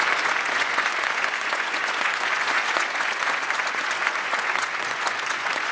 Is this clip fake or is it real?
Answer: fake